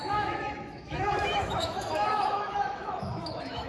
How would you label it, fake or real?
fake